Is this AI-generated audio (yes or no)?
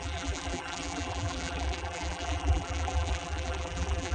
yes